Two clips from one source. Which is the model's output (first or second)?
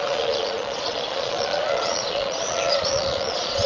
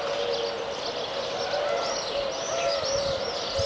first